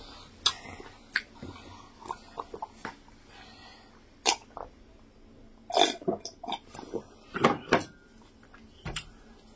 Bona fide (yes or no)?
yes